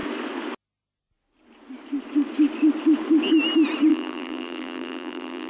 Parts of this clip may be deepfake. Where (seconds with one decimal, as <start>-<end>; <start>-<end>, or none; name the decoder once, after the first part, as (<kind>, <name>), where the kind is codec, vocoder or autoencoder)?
3.9-5.5 (vocoder, BigVGAN v2)